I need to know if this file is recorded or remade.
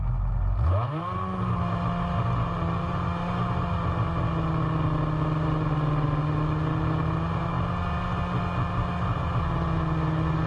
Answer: recorded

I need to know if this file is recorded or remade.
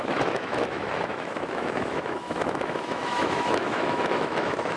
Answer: remade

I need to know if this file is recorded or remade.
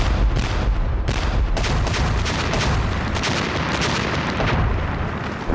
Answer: remade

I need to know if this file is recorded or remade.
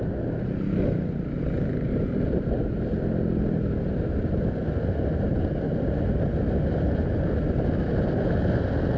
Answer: recorded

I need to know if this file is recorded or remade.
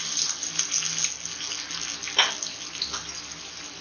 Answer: recorded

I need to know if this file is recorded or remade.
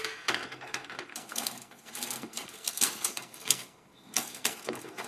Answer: remade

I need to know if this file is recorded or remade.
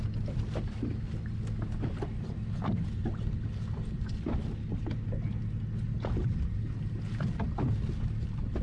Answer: recorded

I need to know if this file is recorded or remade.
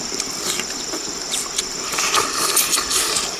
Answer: remade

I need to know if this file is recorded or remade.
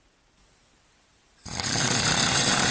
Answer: remade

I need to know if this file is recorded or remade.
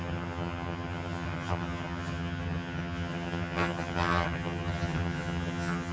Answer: remade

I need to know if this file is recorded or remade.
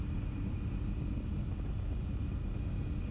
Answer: recorded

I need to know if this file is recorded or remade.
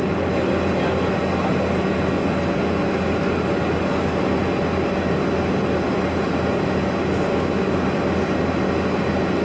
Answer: recorded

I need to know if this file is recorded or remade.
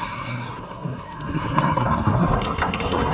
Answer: remade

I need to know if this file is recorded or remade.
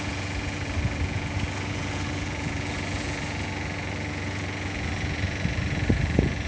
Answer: remade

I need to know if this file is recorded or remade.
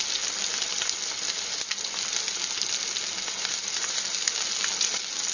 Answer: recorded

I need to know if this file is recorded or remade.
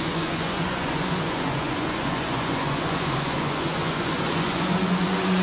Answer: remade